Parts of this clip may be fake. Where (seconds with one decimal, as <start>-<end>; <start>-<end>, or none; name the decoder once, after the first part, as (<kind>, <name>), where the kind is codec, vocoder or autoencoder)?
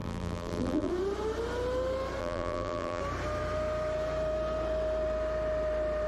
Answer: 0.0-0.9 (vocoder, BigVGAN v2); 2.2-3.0